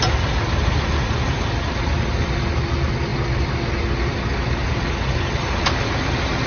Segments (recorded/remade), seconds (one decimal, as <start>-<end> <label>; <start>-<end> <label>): 0.0-6.5 recorded